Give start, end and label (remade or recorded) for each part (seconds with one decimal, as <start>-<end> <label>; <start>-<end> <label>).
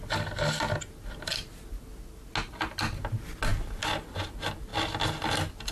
0.0-5.7 recorded